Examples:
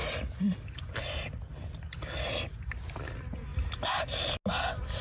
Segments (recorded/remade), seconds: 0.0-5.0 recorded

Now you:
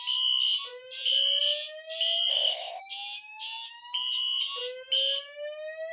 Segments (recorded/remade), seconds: 0.0-2.3 recorded; 2.3-2.8 remade; 2.8-5.9 recorded